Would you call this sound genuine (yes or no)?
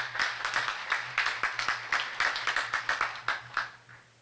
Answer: yes